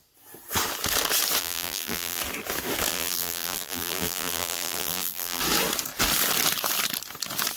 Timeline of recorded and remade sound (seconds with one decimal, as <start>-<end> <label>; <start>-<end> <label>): 0.0-1.4 recorded; 1.4-2.2 remade; 2.2-2.9 recorded; 2.9-5.4 remade; 5.4-7.6 recorded